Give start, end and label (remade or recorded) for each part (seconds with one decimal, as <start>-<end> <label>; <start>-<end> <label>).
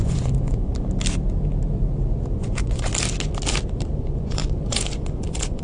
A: 0.0-0.7 remade; 0.7-2.4 recorded; 2.4-2.9 remade; 2.9-4.0 recorded; 4.0-5.6 remade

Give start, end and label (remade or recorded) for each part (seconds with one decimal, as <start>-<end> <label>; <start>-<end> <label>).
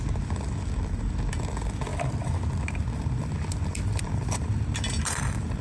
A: 0.0-5.6 recorded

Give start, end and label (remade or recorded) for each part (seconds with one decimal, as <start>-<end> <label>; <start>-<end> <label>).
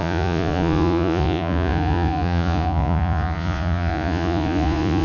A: 0.0-5.0 remade